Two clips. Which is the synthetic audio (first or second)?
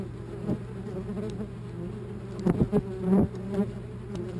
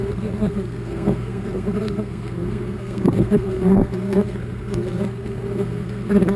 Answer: second